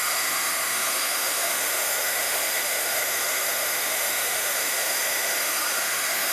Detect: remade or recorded remade